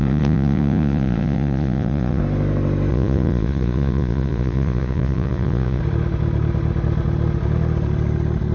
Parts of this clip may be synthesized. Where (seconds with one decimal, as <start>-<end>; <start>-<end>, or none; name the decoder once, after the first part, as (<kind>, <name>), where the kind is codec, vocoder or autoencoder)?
0.0-2.2 (vocoder, Vocos); 2.9-5.8